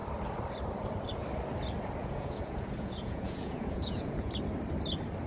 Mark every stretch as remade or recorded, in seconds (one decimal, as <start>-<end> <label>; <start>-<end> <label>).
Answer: 0.0-2.0 recorded; 2.0-4.3 remade; 4.3-5.3 recorded